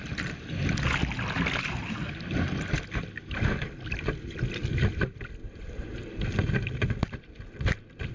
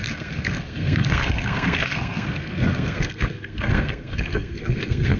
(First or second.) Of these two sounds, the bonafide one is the first